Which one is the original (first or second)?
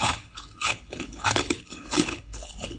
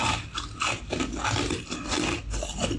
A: second